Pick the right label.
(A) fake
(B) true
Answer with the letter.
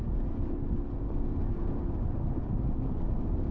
B